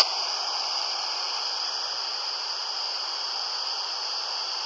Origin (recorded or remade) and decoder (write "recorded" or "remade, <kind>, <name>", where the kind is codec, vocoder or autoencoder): remade, vocoder, BigVGAN v2